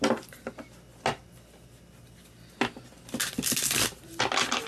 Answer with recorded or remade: recorded